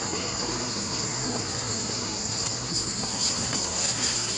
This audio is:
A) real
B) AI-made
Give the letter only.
B